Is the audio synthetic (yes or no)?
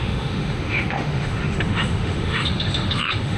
yes